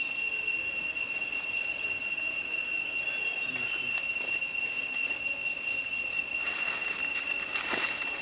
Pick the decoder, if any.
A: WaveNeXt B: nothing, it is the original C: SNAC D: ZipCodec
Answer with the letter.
B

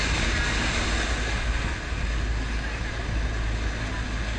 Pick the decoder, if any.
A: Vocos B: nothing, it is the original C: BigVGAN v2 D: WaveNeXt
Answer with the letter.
B